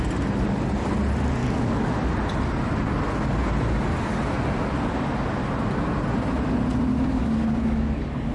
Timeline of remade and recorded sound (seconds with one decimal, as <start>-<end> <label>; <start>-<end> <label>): 0.0-1.4 recorded; 1.4-1.9 remade; 1.9-6.9 recorded; 6.9-8.3 remade